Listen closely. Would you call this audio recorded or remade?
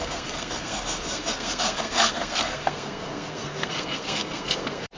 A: remade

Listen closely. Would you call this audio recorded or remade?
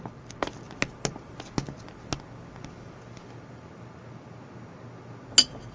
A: recorded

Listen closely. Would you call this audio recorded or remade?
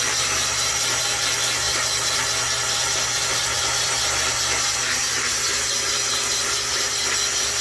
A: recorded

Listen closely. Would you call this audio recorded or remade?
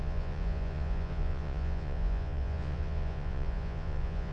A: remade